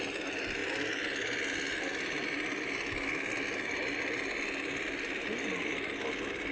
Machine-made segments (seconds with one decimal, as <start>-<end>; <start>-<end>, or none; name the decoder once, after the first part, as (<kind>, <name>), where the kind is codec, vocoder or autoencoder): none